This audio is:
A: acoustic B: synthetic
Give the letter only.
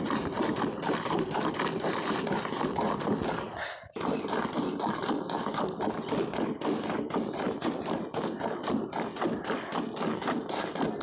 A